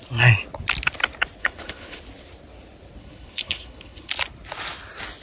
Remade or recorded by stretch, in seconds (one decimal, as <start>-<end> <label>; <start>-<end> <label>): 0.0-1.4 recorded; 1.4-2.0 remade; 2.0-3.0 recorded; 3.0-4.1 remade; 4.1-5.2 recorded